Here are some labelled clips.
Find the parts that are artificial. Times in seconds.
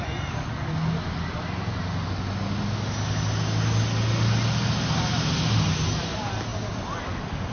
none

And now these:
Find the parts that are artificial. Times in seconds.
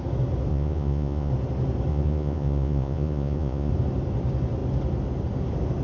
0.5-1.3 (vocoder, Vocos); 1.9-3.7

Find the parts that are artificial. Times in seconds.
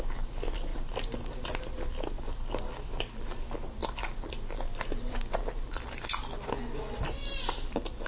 none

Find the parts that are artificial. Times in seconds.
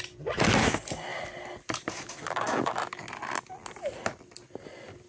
none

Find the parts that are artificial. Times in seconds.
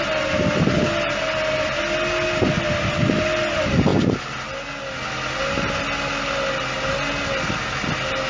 none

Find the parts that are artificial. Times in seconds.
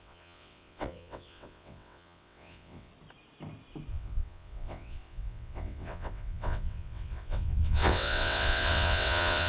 0.0-2.9 (vocoder, WaveNeXt); 3.9-9.5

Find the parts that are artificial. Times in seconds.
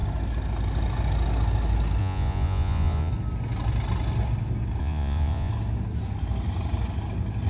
2.0-3.1 (vocoder, Vocos); 4.8-5.5